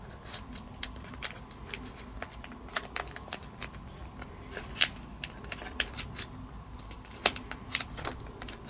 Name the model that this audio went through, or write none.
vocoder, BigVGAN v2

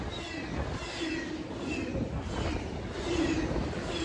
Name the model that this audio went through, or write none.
none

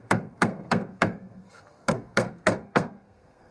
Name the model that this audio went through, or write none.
codec, SNAC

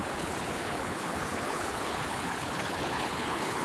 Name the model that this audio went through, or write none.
codec, HILCodec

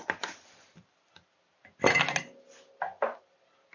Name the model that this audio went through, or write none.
none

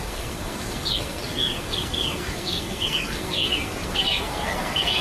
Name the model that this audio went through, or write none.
codec, SNAC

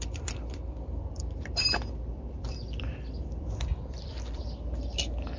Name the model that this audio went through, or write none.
vocoder, BigVGAN v2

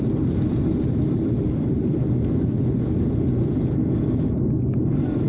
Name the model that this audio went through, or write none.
none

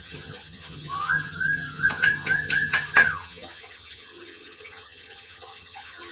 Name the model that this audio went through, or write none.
vocoder, HiFi-GAN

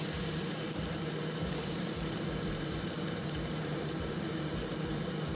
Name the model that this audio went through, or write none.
vocoder, BigVGAN v2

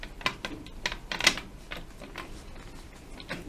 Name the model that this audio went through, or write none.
none